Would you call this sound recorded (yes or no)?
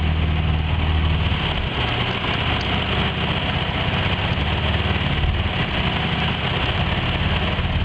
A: yes